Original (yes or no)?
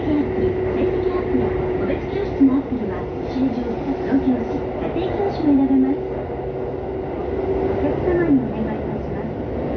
yes